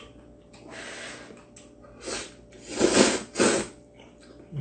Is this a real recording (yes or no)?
yes